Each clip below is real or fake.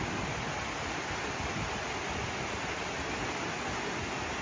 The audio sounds real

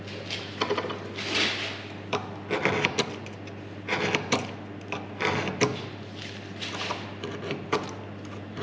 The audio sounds real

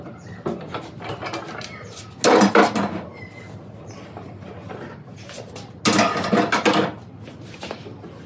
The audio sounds real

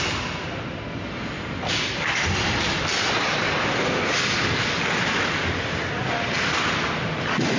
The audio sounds real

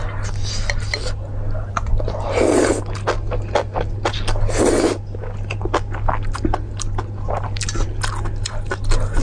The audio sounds real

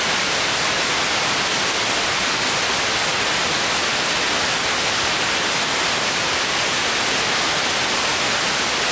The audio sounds real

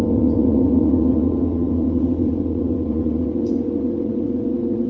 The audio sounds fake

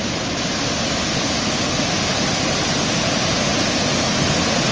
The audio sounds real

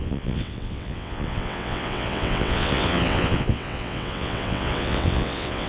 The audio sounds fake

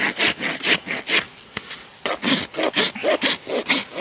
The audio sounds real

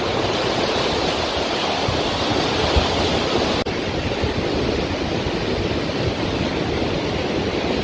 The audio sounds real